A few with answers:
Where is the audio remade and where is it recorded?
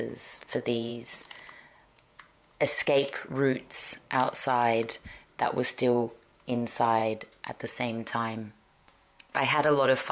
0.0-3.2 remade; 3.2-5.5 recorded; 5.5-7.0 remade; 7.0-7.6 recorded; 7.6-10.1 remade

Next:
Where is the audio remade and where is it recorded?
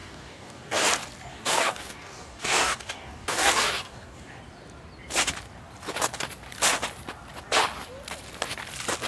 0.0-0.9 remade; 0.9-1.3 recorded; 1.3-4.4 remade; 4.4-9.1 recorded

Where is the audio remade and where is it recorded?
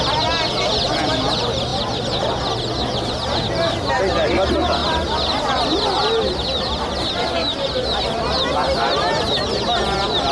0.0-10.3 recorded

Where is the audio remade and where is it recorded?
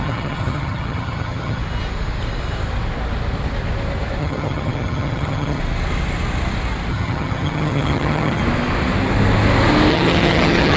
0.0-1.6 remade; 1.6-4.2 recorded; 4.2-5.6 remade; 5.6-6.9 recorded; 6.9-8.4 remade; 8.4-9.9 recorded; 9.9-10.8 remade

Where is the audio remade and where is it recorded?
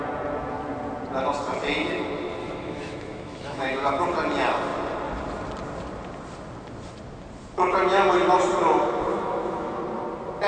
0.0-2.4 recorded; 2.4-4.0 remade; 4.0-9.1 recorded; 9.1-9.8 remade; 9.8-10.5 recorded